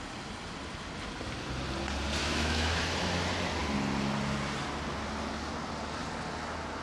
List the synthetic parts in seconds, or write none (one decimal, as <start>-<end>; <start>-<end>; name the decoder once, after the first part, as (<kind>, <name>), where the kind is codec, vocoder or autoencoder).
2.2-2.8 (autoencoder, DAC-VAE)